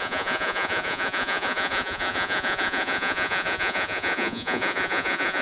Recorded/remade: remade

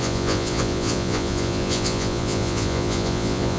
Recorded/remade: remade